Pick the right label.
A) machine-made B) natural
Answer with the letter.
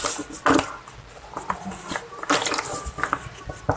B